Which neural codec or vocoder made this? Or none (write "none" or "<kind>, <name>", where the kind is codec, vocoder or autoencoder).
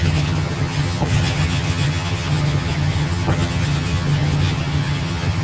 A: vocoder, HiFi-GAN